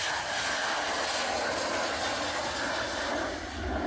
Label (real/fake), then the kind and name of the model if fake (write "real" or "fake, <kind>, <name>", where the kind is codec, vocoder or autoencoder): real